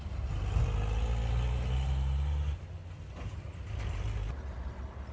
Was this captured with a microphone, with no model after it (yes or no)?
yes